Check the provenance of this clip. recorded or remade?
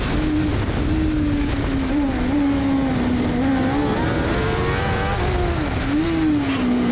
recorded